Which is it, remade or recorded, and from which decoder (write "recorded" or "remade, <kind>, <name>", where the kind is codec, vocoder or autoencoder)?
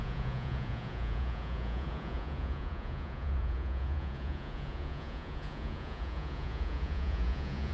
remade, vocoder, Vocos